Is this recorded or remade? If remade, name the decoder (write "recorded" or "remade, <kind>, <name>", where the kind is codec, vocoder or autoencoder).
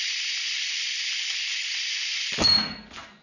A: recorded